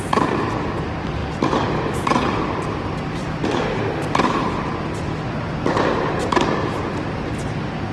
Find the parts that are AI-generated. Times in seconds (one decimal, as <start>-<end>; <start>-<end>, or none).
none